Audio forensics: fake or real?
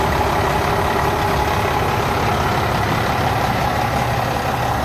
real